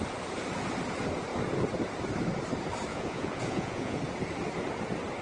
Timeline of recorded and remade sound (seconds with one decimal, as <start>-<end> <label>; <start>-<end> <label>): 0.0-2.9 recorded; 2.9-4.0 remade; 4.0-5.2 recorded